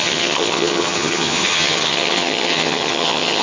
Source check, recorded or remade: remade